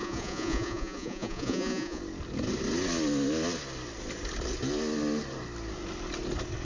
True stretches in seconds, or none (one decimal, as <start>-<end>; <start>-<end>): 2.0-6.6